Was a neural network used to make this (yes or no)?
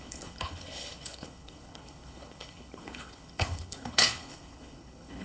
yes